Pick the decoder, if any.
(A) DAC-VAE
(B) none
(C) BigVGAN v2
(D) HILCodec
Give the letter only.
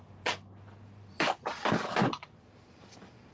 B